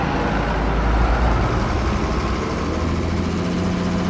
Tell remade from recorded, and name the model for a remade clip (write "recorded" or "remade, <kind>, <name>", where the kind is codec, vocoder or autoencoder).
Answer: recorded